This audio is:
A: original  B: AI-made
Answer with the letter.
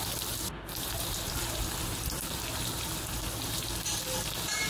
A